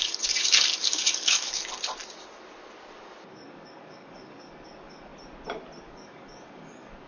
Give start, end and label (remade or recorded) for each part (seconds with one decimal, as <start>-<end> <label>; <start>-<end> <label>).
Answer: 0.0-1.6 remade; 1.6-3.3 recorded; 3.3-5.1 remade; 5.1-5.8 recorded; 5.8-7.1 remade